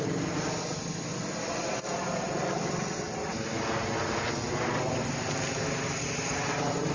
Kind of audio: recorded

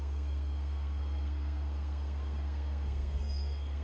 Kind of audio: remade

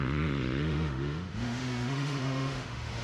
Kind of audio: remade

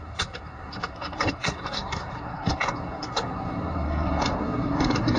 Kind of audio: remade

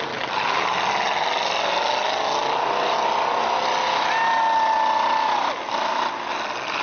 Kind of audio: recorded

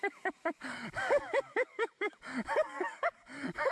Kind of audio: remade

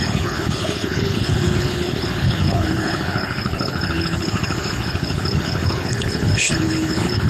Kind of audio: remade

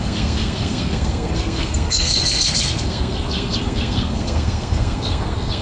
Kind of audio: remade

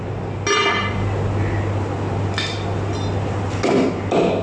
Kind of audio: recorded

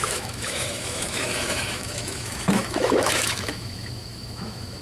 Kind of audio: remade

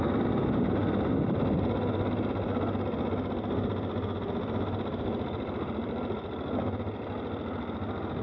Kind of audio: recorded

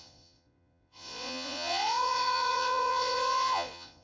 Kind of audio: remade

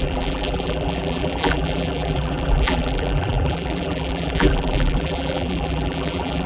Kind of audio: remade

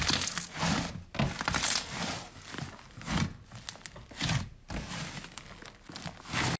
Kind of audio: recorded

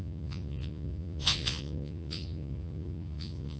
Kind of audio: remade